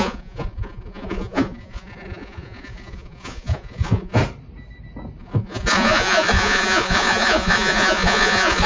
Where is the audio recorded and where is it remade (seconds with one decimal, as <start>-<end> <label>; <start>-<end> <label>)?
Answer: 0.0-4.2 remade; 4.2-5.2 recorded; 5.2-8.7 remade